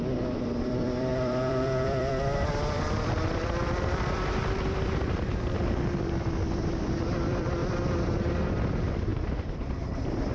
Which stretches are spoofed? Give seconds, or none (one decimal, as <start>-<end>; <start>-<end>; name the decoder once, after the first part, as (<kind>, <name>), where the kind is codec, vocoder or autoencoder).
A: 0.0-7.6 (vocoder, BigVGAN v2); 8.4-9.1; 9.6-10.3